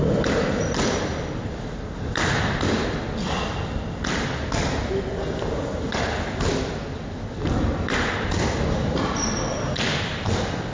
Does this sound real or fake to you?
real